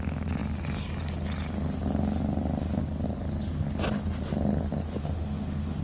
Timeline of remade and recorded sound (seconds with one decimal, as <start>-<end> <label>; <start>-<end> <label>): 0.0-5.0 recorded; 5.0-5.8 remade